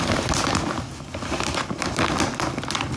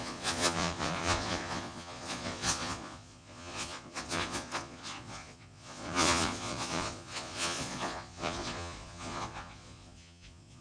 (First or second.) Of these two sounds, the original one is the first